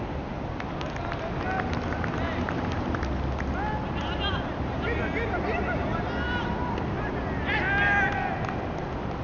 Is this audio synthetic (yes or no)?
no